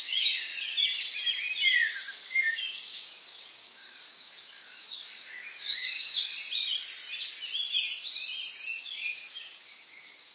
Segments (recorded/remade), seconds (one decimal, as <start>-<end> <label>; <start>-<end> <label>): 0.0-0.5 remade; 0.5-2.1 recorded; 2.1-6.3 remade; 6.3-8.8 recorded; 8.8-10.3 remade